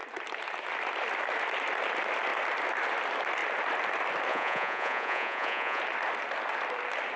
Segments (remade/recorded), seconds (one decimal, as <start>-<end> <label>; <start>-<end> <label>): 0.0-4.3 recorded; 4.3-5.8 remade; 5.8-7.2 recorded